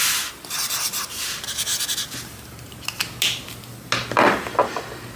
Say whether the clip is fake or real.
real